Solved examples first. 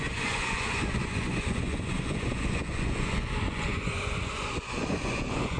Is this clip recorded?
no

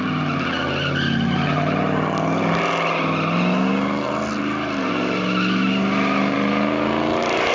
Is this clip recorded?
yes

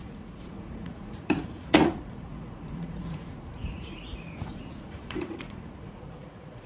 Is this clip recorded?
no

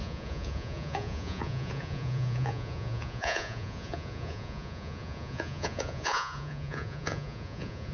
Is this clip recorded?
no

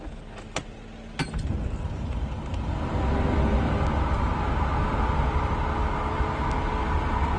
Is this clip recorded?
yes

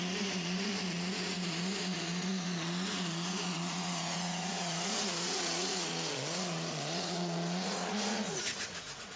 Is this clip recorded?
no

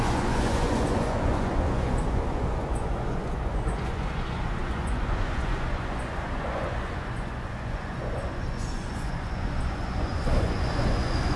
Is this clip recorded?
no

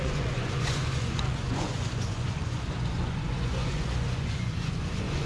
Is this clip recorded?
no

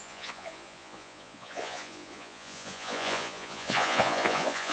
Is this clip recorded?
no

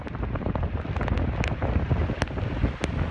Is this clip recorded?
yes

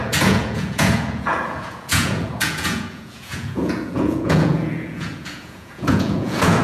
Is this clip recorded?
no